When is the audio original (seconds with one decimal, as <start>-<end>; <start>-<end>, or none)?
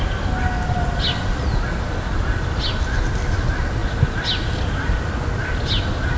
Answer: 0.0-6.2